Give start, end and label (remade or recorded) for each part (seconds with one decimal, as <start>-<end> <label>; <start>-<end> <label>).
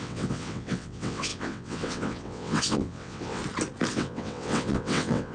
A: 0.0-3.4 remade; 3.4-3.9 recorded; 3.9-5.3 remade